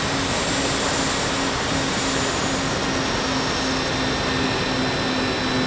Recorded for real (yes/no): yes